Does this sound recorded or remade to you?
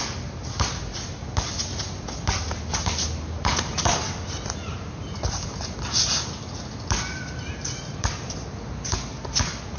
recorded